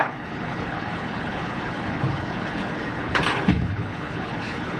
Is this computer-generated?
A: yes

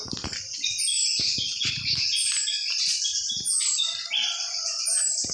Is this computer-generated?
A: yes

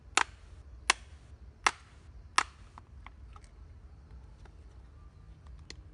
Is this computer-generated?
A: no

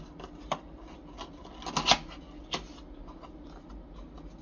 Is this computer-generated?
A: no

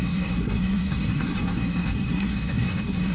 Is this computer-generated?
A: yes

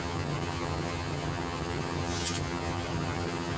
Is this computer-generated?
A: yes